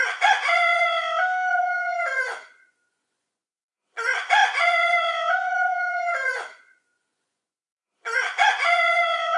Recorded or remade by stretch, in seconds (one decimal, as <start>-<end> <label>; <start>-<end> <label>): 0.0-1.0 remade; 1.0-1.5 recorded; 1.5-9.4 remade